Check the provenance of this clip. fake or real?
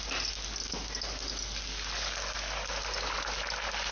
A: real